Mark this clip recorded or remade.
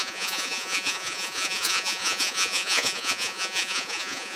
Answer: remade